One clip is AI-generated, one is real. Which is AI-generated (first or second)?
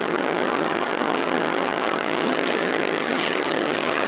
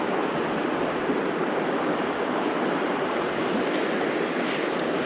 first